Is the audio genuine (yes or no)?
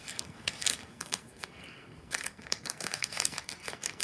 no